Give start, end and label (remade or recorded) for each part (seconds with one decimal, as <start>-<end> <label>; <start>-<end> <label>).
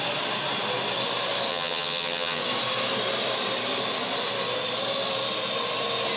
0.0-1.5 recorded; 1.5-2.4 remade; 2.4-6.2 recorded